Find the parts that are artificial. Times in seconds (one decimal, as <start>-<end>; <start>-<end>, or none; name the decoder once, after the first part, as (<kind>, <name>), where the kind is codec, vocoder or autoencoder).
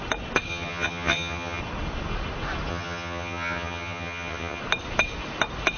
0.5-1.6 (vocoder, HiFi-GAN); 2.7-4.6